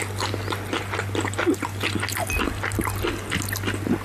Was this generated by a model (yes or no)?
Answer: no